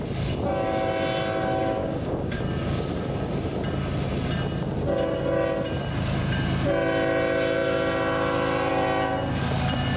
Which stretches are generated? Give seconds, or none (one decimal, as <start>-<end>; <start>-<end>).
1.8-2.4